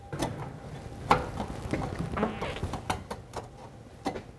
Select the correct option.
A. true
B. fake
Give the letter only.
A